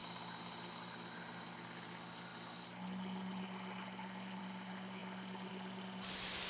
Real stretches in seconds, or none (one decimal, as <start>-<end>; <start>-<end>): 0.0-6.5